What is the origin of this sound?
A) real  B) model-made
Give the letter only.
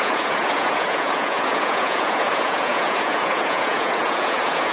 B